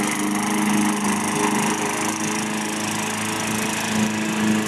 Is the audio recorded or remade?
recorded